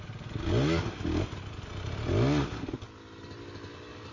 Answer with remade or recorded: recorded